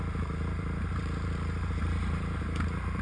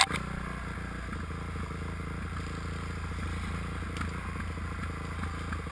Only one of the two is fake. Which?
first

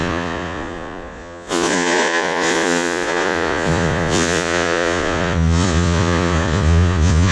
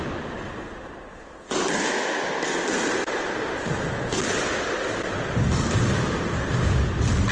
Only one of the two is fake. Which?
first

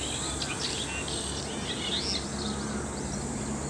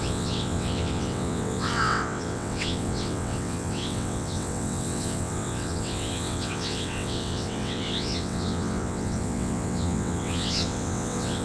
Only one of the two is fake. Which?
second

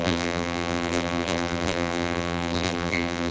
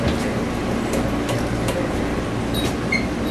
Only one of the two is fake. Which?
first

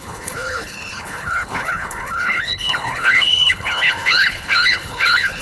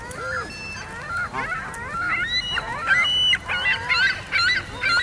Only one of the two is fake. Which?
first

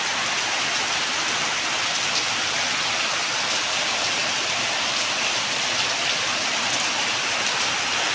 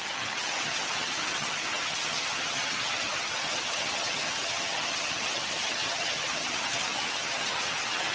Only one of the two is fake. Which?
second